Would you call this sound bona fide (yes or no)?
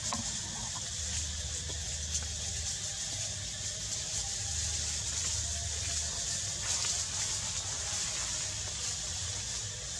yes